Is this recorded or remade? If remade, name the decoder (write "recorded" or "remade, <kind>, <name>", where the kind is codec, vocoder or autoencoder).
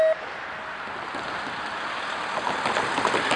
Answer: recorded